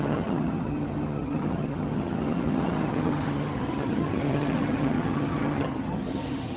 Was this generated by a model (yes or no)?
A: yes